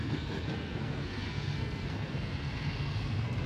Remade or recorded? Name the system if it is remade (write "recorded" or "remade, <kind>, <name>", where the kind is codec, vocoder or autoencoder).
remade, codec, SNAC